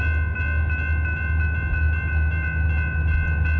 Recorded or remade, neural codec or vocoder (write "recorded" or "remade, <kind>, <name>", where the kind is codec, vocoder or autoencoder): recorded